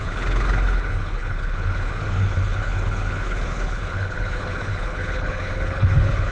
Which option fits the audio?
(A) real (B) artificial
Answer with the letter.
B